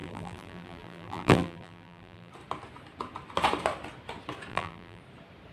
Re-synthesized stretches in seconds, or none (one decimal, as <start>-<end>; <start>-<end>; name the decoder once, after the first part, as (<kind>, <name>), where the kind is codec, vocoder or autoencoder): 0.0-2.3 (vocoder, BigVGAN v2); 4.5-5.0